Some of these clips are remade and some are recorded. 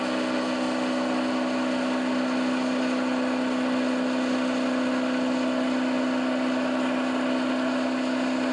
recorded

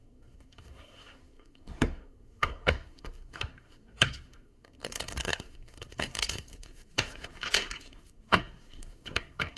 remade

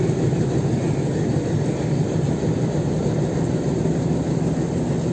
recorded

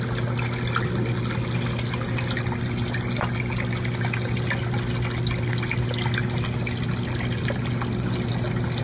recorded